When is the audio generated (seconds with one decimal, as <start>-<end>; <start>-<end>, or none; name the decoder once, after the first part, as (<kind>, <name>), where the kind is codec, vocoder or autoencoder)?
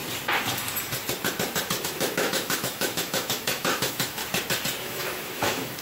1.8-4.2 (autoencoder, DAC-VAE); 4.8-5.8